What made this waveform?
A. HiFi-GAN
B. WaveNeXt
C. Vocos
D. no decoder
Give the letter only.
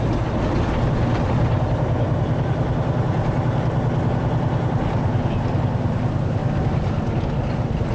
D